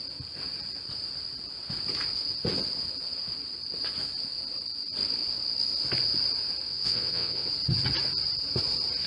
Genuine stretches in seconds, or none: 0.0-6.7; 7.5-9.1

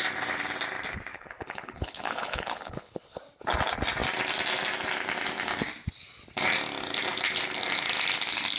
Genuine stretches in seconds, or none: 0.0-1.1; 3.2-8.6

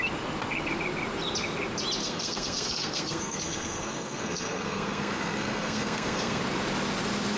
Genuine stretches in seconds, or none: 0.0-2.0; 6.4-7.4

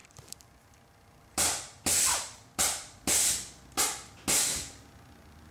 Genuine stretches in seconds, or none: 3.3-5.5

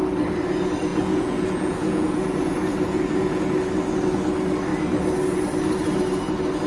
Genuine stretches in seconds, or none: 0.0-0.9; 3.4-6.7

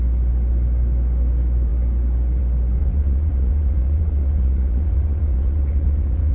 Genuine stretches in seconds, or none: 0.0-2.8

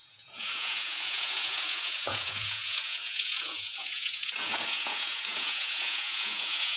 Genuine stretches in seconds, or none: none

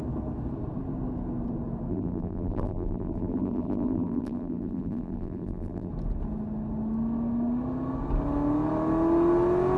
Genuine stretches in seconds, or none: 0.0-1.9; 5.9-9.8